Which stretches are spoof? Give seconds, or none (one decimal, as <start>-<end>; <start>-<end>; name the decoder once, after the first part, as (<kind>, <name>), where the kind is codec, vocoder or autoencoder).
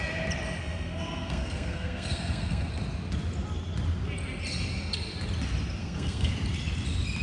0.6-2.7 (codec, SNAC); 5.8-6.3